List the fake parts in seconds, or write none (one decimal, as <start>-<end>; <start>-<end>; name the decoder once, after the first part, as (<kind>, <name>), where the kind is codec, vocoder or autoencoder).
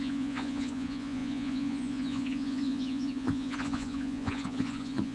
0.0-5.1 (vocoder, Vocos)